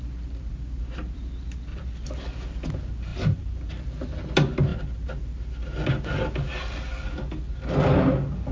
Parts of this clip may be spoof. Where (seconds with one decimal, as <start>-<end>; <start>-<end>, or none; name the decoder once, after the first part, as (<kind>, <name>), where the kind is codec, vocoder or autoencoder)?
1.7-2.2 (vocoder, BigVGAN v2); 3.1-3.7